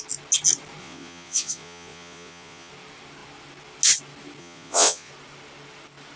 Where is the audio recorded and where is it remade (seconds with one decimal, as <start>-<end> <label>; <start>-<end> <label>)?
0.0-0.8 recorded; 0.8-2.7 remade; 2.7-4.4 recorded; 4.4-5.1 remade; 5.1-6.2 recorded